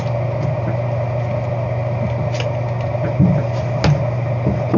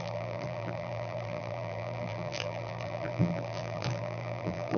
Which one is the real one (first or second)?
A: first